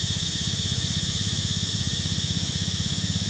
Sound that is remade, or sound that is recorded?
remade